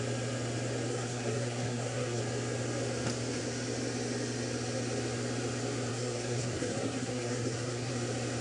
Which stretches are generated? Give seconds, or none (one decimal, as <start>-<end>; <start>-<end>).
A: 0.9-2.2; 5.9-7.9

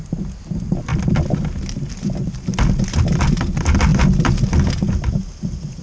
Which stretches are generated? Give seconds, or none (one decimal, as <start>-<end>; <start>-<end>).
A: none

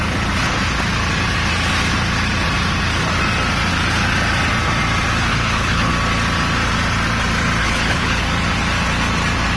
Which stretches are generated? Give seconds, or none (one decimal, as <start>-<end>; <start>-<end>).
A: 5.3-5.9; 7.6-8.2